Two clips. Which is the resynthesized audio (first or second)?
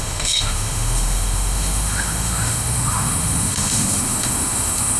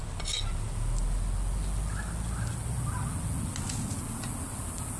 first